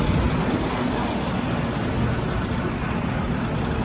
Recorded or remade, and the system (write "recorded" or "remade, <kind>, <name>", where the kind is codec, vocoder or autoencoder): recorded